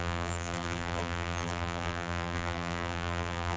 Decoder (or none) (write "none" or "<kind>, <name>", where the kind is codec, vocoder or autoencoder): vocoder, BigVGAN v2